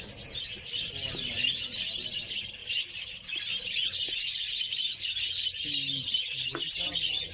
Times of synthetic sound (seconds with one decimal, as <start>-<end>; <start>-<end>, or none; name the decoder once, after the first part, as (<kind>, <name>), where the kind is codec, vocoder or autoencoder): none

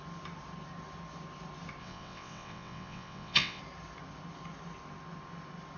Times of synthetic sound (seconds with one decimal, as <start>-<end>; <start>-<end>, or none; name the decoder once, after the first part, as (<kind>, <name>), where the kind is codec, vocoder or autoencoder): 1.8-3.6 (vocoder, WaveNeXt)

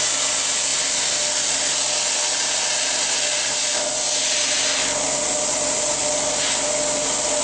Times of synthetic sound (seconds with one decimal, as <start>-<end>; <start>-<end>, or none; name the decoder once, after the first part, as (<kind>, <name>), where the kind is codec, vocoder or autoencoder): none

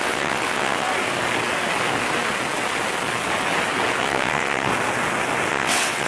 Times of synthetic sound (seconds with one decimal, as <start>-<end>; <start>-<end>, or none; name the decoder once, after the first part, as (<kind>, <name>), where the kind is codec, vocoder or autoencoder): 0.0-0.9 (vocoder, WaveNeXt); 4.0-4.7; 5.5-6.1

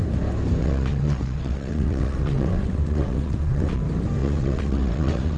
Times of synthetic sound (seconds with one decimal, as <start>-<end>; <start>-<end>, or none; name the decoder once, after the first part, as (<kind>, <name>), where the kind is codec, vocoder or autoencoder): 0.6-3.8 (vocoder, WaveNeXt); 4.2-5.4

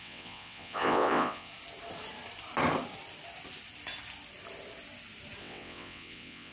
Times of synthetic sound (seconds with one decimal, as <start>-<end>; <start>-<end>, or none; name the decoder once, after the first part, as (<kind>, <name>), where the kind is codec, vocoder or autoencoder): 0.0-1.5 (vocoder, WaveNeXt); 5.4-6.5

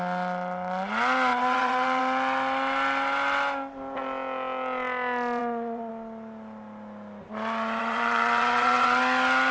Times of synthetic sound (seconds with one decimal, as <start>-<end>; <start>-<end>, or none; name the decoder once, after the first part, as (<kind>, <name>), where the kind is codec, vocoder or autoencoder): 1.3-2.0 (vocoder, WaveNeXt); 5.4-5.9; 7.8-9.0

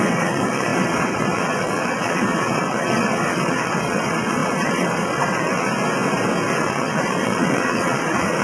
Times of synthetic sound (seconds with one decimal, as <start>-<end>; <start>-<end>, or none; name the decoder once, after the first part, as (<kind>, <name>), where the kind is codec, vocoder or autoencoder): 0.0-5.7 (vocoder, WaveNeXt); 6.6-8.4